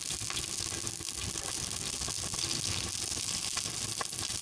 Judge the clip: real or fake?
real